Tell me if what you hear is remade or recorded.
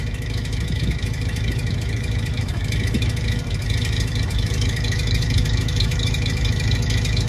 remade